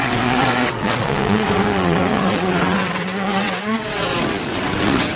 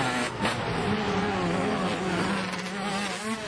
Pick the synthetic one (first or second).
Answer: first